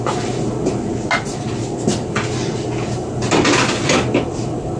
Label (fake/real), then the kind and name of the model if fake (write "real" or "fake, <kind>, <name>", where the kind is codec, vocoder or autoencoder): real